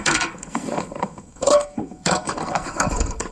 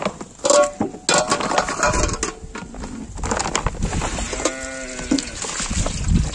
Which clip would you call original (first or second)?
second